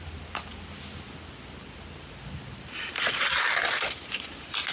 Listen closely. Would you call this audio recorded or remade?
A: recorded